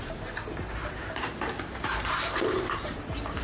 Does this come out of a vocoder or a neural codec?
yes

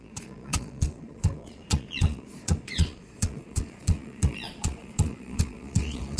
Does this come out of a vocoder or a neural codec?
yes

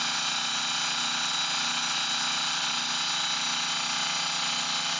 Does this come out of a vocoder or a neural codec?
no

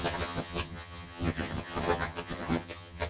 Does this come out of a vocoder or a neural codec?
yes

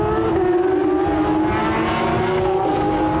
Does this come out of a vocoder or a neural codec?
no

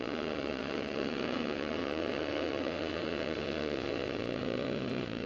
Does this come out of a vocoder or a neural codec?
yes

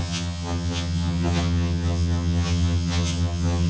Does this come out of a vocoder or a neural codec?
yes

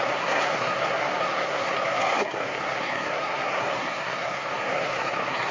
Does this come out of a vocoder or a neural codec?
yes